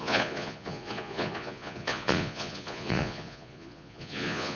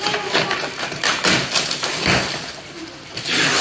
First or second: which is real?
second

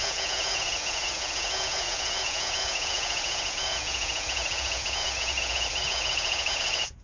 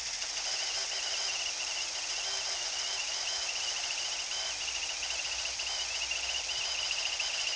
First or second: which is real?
second